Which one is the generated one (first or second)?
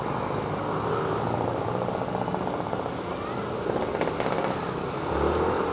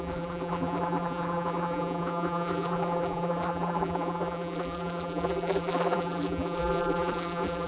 second